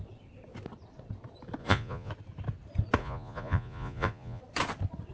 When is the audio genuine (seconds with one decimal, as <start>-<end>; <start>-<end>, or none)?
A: 0.0-1.6; 2.1-3.0; 4.4-5.1